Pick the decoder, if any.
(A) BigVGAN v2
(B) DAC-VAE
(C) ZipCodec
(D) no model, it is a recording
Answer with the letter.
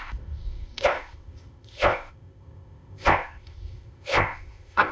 C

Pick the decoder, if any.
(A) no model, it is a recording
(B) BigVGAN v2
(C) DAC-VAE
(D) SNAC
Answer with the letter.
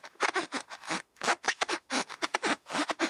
C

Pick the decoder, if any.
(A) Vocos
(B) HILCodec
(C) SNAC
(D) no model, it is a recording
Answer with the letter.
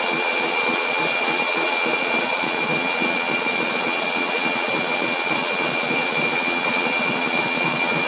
A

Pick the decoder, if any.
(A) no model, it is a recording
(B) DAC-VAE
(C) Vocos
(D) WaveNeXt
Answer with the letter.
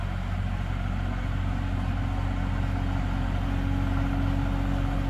A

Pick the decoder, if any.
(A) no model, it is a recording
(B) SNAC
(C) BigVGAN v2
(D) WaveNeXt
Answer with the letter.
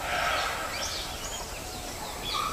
C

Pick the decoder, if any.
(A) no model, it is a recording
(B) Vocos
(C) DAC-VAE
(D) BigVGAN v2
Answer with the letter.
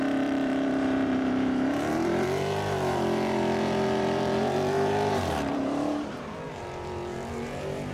D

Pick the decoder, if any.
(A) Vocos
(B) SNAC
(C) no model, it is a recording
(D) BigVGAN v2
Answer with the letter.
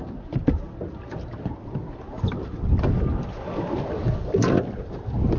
C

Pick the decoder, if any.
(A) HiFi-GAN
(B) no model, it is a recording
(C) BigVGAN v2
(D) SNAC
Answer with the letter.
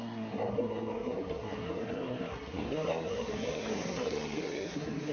D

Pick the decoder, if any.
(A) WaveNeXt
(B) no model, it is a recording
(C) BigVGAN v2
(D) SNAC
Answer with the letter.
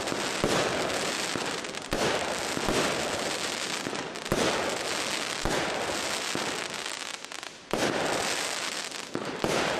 B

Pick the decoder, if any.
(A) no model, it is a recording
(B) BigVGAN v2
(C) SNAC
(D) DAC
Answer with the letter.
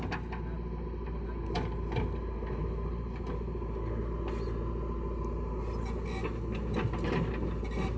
A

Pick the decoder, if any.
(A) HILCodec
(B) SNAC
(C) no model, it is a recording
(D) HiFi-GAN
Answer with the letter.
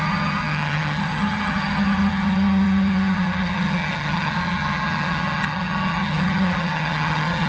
D